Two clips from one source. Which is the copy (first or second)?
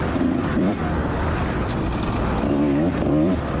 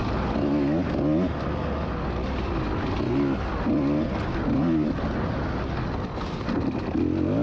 first